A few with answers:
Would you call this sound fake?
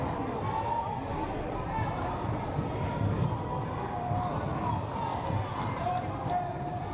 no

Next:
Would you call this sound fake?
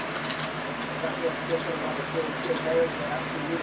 no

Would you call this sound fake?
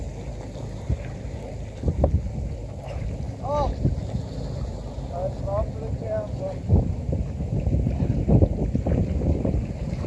no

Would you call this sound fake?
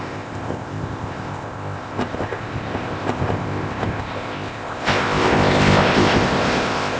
yes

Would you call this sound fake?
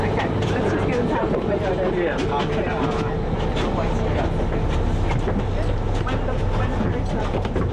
no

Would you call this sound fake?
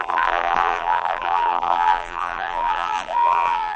yes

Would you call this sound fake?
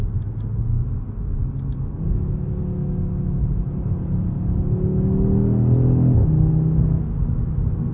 no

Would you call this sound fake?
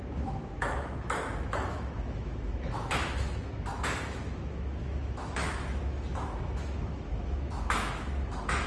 yes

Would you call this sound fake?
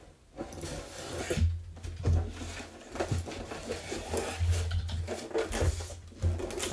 no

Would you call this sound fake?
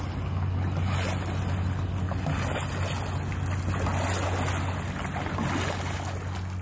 no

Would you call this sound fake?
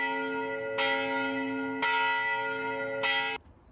no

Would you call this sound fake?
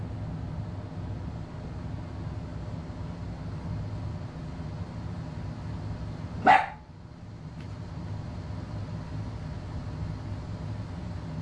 no